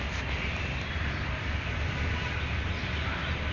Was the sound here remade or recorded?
recorded